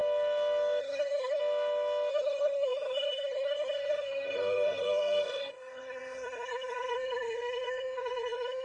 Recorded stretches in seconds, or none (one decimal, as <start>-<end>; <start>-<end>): 0.0-0.8; 1.4-2.1